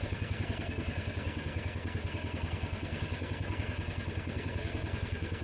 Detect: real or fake fake